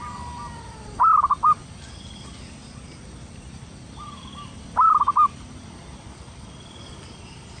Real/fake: real